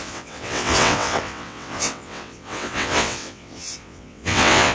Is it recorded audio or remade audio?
remade